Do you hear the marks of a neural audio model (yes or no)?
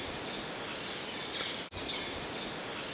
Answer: no